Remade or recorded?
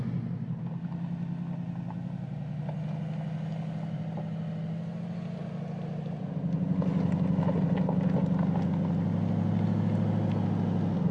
recorded